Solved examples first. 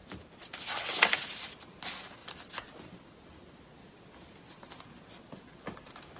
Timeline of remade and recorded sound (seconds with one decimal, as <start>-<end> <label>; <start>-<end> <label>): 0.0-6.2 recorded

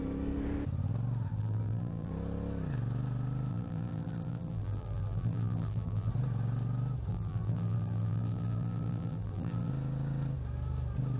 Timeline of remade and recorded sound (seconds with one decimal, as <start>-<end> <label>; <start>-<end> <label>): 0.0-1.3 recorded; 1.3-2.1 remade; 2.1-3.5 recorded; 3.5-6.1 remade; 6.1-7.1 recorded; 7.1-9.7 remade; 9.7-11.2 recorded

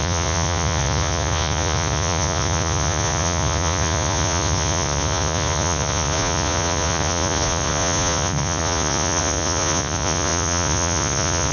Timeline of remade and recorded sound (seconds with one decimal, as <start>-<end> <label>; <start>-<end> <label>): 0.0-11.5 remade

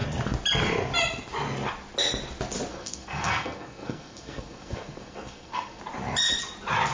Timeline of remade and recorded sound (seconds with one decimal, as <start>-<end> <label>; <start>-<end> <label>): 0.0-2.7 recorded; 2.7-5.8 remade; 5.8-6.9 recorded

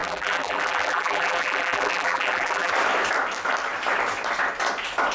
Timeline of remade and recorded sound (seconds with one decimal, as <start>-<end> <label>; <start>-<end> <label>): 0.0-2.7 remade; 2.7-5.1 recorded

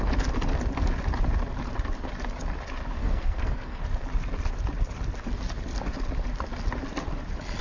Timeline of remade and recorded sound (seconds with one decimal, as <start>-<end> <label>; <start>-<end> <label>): 0.0-3.0 recorded; 3.0-3.8 remade; 3.8-7.6 recorded

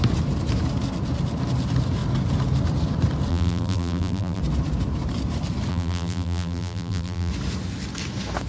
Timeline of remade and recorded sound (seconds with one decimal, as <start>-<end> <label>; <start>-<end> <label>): 0.0-3.3 recorded; 3.3-4.4 remade; 4.4-5.7 recorded; 5.7-7.3 remade; 7.3-8.5 recorded

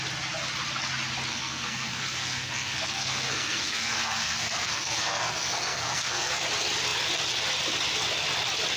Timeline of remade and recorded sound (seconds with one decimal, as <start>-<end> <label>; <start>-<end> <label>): 0.0-1.3 recorded; 1.3-6.4 remade; 6.4-8.8 recorded